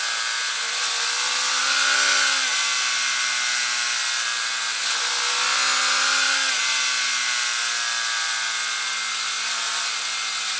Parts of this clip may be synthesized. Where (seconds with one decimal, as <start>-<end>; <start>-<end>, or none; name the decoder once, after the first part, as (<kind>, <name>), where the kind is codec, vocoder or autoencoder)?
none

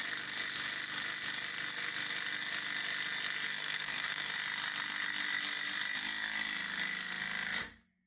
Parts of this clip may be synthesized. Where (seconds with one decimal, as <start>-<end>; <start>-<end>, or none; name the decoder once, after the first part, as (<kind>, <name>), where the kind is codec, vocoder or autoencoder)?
3.5-4.3 (codec, SNAC)

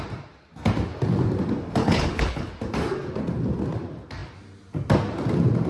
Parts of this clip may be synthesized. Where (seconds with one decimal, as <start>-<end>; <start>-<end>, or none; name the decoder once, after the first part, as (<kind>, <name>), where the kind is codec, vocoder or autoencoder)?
1.8-2.5 (codec, HILCodec)